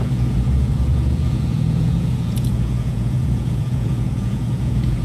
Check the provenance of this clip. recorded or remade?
remade